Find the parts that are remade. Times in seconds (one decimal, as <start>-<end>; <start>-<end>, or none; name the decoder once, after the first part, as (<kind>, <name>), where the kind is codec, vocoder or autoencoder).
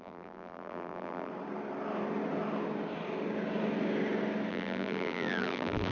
0.0-1.3 (vocoder, BigVGAN v2); 4.5-5.9